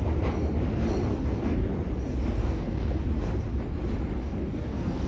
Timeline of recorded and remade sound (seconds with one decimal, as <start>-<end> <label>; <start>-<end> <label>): 0.0-1.1 recorded; 1.1-1.7 remade; 1.7-2.4 recorded; 2.4-3.0 remade; 3.0-4.2 recorded; 4.2-5.1 remade